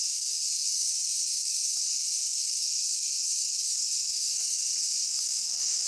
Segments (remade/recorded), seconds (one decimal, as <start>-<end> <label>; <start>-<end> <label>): 0.0-5.9 remade

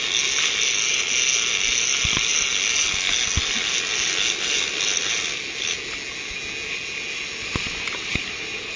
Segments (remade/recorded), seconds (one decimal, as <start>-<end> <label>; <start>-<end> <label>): 0.0-8.8 recorded

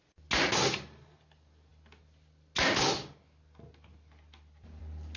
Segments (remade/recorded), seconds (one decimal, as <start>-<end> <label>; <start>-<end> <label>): 0.0-5.2 recorded

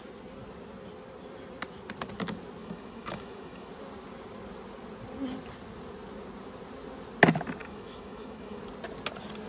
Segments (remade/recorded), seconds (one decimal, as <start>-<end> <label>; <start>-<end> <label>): 0.0-2.6 recorded; 2.6-3.7 remade; 3.7-7.6 recorded; 7.6-8.6 remade; 8.6-9.5 recorded

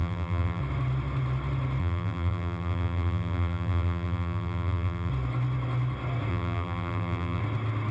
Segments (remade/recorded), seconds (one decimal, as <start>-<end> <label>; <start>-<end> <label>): 0.0-0.6 remade; 0.6-1.8 recorded; 1.8-5.1 remade; 5.1-6.3 recorded; 6.3-7.4 remade; 7.4-7.9 recorded